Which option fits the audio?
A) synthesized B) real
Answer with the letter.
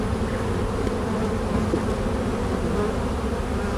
B